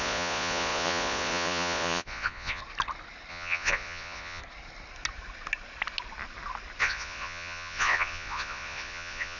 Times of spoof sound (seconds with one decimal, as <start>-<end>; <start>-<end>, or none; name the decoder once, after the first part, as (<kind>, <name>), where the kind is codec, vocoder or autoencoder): 0.0-2.6 (vocoder, Vocos); 3.3-4.4; 6.8-9.4